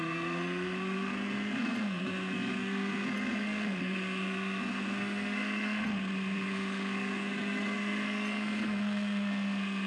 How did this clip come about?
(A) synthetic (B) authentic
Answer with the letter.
A